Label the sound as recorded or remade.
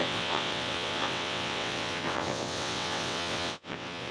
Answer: remade